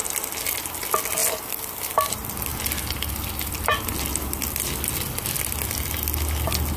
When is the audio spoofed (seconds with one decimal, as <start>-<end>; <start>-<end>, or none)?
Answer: none